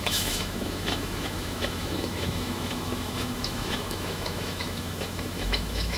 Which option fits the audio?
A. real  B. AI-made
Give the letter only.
B